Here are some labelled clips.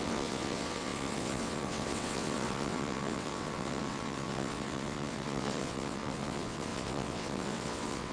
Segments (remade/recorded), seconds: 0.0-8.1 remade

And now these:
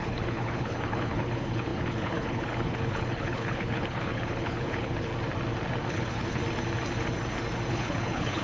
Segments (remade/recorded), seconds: 0.0-5.1 remade; 5.1-5.9 recorded; 5.9-6.4 remade; 6.4-7.7 recorded; 7.7-8.4 remade

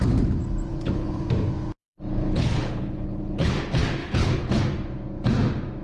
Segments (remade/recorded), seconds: 0.0-0.7 recorded; 0.7-1.3 remade; 1.3-1.8 recorded; 1.8-3.5 remade; 3.5-4.0 recorded; 4.0-4.6 remade; 4.6-5.8 recorded

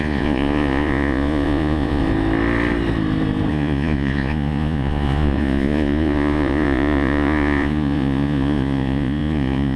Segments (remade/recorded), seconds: 0.0-2.0 remade; 2.0-3.5 recorded; 3.5-9.8 remade